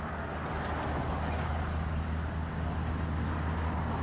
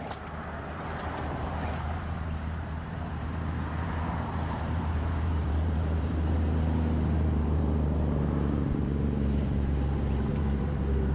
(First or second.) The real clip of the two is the first